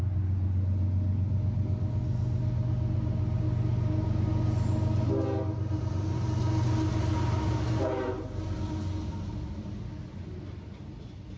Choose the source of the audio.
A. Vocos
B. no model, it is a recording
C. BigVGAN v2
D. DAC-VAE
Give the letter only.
B